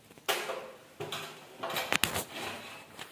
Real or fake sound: real